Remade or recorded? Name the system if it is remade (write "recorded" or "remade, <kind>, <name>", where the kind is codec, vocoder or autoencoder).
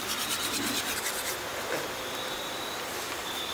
recorded